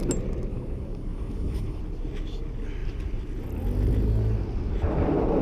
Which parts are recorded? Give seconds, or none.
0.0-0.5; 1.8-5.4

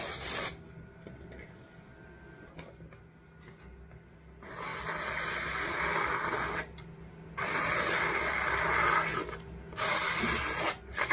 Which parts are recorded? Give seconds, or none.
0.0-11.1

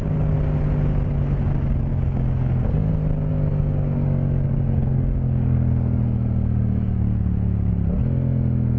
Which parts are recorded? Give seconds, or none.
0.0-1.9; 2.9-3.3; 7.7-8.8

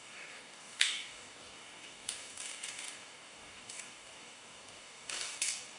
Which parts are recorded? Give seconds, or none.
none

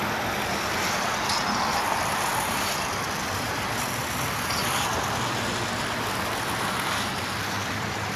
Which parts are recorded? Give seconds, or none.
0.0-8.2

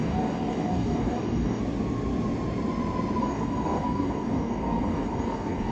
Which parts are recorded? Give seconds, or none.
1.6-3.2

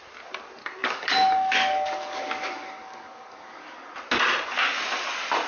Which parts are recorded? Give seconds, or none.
0.0-0.8; 3.9-5.5